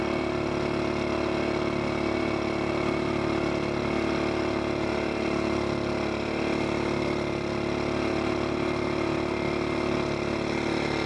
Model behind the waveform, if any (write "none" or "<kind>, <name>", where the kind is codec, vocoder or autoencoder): none